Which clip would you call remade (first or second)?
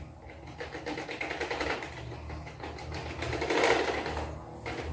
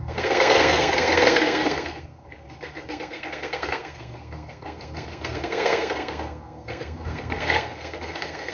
second